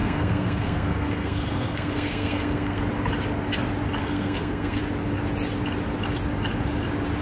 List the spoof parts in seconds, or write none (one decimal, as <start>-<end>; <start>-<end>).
0.0-2.8; 4.0-4.8